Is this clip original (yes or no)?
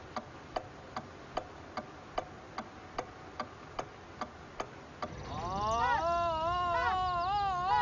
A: yes